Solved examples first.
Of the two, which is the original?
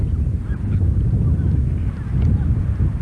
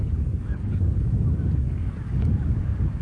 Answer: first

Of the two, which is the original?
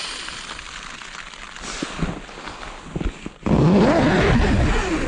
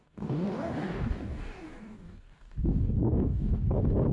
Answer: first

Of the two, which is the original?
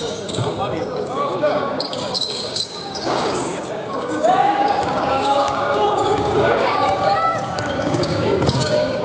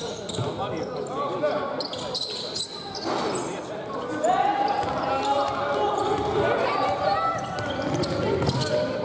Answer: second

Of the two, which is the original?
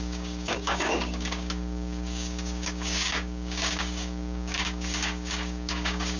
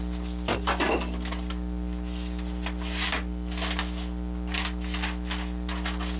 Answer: second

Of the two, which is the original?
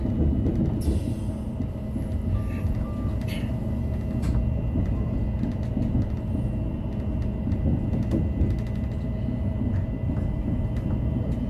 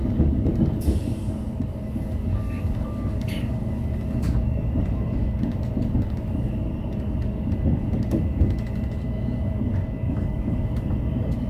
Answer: first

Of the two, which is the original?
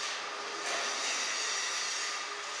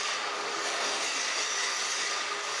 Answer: first